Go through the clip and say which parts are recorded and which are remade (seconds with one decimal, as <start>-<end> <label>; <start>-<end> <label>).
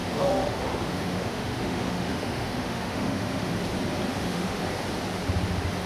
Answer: 0.0-3.5 remade; 3.5-4.1 recorded; 4.1-4.6 remade; 4.6-5.9 recorded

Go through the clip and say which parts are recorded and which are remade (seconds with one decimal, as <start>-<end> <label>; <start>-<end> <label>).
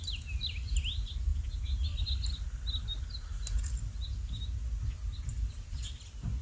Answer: 0.0-6.4 recorded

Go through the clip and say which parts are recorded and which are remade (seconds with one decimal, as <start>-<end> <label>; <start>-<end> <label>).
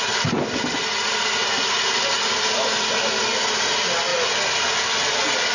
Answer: 0.0-5.5 recorded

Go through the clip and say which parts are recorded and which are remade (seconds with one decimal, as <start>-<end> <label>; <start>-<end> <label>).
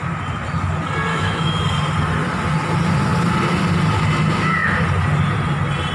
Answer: 0.0-1.1 recorded; 1.1-1.6 remade; 1.6-5.9 recorded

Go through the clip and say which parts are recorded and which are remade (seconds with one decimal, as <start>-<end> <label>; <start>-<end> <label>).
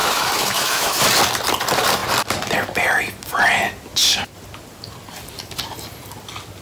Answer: 0.0-1.0 remade; 1.0-6.6 recorded